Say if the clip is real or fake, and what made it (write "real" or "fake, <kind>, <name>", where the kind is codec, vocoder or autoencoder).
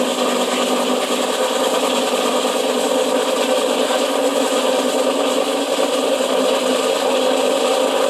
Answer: real